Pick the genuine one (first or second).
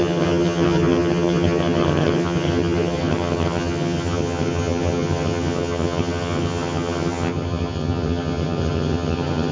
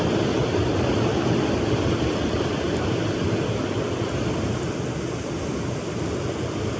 second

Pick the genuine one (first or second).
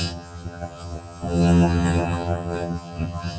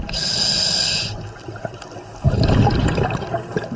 second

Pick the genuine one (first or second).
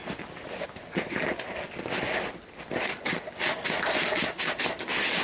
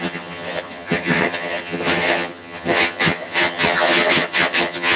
first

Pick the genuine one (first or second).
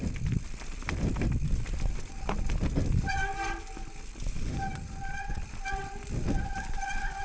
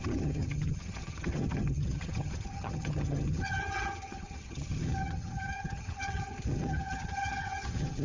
first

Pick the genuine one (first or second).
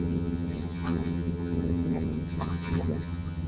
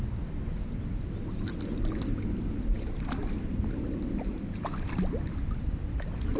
second